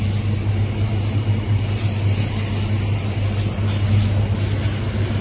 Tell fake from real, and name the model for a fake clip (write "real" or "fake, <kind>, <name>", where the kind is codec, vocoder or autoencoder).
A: real